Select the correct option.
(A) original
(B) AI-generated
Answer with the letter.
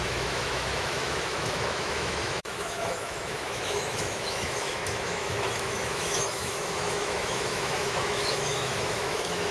B